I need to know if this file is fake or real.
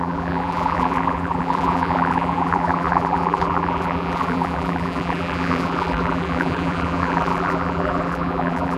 fake